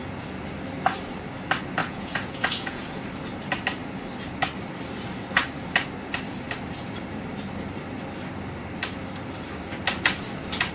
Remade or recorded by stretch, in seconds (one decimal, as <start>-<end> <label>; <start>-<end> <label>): 0.0-1.8 recorded; 1.8-3.0 remade; 3.0-10.7 recorded